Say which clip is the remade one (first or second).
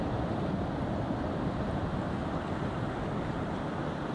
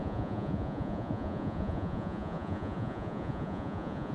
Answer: second